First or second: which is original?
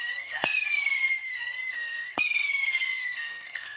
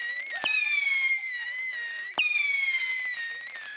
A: second